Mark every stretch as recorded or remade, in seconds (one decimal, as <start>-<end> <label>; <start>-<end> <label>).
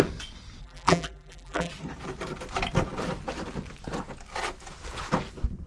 0.0-0.6 recorded; 0.6-1.7 remade; 1.7-5.7 recorded